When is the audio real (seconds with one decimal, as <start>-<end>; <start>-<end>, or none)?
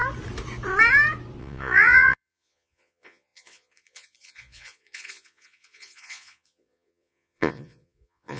0.0-1.4